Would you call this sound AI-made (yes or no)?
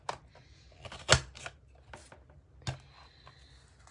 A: no